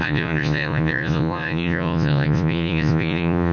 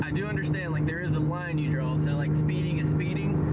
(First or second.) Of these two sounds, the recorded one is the second